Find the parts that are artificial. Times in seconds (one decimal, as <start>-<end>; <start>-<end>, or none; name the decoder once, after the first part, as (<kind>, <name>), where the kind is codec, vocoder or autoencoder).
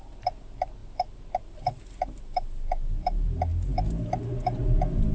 none